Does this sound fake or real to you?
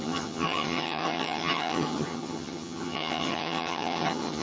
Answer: fake